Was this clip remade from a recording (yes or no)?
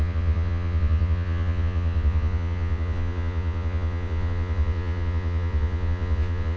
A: yes